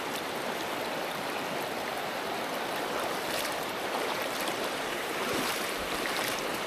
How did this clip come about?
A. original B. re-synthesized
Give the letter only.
B